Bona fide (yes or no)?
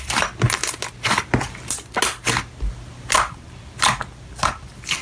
yes